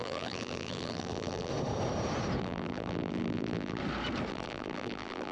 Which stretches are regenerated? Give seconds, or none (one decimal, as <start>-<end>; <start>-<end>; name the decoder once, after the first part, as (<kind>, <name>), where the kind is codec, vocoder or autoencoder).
0.0-1.5 (vocoder, BigVGAN v2); 2.4-3.8; 4.3-5.3

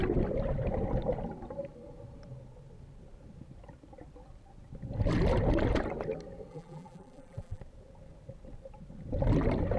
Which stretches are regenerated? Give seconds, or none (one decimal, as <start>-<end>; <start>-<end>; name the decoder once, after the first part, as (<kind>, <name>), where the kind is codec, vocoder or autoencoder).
6.5-7.6 (vocoder, BigVGAN v2)

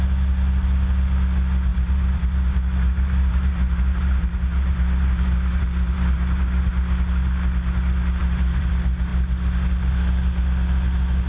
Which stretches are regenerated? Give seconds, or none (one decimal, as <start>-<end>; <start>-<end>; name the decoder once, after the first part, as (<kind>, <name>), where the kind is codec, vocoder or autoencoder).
1.7-6.7 (vocoder, BigVGAN v2); 8.2-8.7

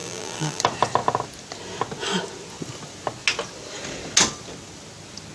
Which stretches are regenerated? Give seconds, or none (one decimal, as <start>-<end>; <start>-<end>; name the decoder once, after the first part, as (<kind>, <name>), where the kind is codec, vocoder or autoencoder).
0.0-0.6 (vocoder, BigVGAN v2)